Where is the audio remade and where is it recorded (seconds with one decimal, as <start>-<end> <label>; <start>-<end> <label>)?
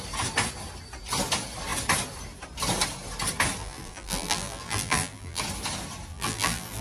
0.0-3.6 recorded; 3.6-5.4 remade; 5.4-6.1 recorded; 6.1-6.8 remade